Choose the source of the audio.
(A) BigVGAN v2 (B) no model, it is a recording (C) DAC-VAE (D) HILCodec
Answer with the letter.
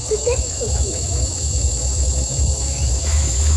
C